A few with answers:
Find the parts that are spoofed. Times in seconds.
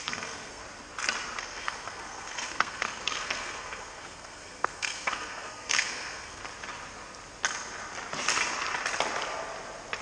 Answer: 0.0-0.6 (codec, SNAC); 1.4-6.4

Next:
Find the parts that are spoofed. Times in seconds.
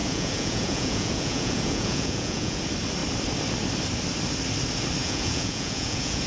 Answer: 0.0-2.6 (vocoder, Vocos); 5.0-6.3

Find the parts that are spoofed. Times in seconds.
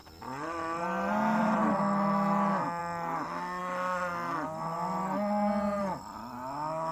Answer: none